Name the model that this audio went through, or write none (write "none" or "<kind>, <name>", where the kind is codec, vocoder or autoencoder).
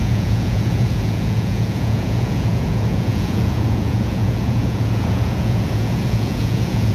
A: vocoder, Vocos